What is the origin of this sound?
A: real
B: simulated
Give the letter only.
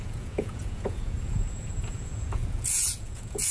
B